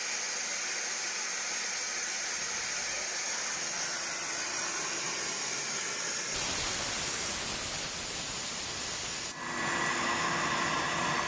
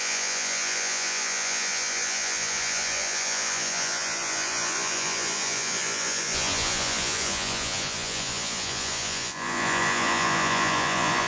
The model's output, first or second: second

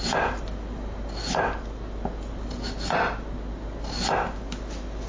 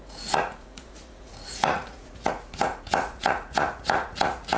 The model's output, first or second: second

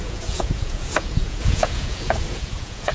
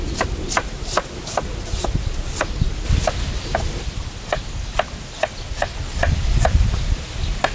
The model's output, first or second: first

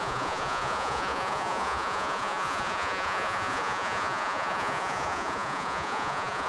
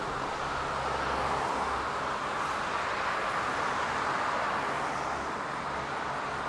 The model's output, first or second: first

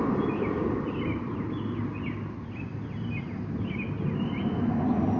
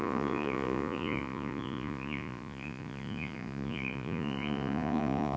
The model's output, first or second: second